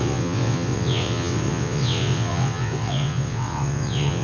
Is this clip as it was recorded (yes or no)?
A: no